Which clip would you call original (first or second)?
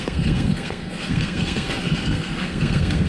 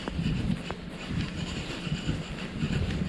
second